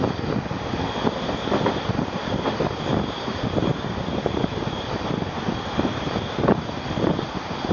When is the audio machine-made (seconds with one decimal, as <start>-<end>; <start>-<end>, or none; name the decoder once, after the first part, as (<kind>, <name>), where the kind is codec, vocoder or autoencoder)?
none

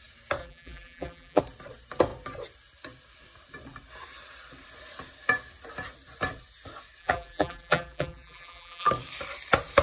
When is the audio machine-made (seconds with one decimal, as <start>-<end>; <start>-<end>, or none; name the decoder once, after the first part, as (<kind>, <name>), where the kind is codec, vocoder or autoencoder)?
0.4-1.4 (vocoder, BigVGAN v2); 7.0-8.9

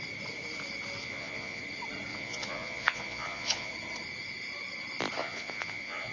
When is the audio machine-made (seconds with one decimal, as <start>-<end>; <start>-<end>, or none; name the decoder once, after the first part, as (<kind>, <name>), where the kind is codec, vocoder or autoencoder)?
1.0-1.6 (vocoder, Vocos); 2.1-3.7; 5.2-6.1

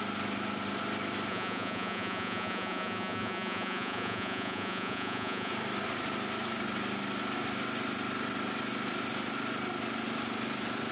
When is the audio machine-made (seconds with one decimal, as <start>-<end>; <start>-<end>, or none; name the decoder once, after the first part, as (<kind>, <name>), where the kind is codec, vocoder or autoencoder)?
1.3-5.5 (vocoder, Vocos)

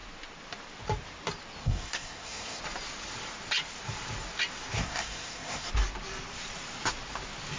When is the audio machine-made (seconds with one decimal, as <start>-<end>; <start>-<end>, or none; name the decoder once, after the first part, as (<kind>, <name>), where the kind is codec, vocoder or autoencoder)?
1.6-2.6 (codec, SNAC); 4.8-5.7

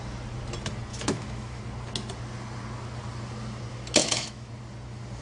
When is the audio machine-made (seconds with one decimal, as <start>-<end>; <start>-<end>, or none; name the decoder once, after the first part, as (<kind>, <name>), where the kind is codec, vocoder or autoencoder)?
0.9-1.6 (autoencoder, DAC-VAE); 4.0-4.5

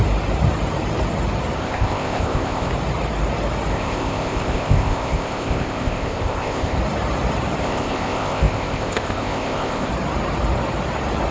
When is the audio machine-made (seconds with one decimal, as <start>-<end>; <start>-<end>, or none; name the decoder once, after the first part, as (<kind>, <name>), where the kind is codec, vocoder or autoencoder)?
1.6-2.7 (codec, ZipCodec); 3.7-6.8; 7.6-9.9

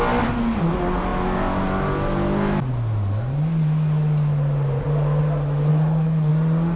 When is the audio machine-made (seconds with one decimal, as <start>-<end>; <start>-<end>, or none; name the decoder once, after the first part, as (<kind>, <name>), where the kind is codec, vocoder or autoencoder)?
5.7-6.3 (codec, HILCodec)